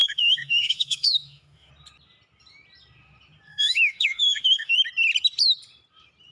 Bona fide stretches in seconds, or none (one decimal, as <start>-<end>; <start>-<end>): 1.7-3.5; 4.7-6.3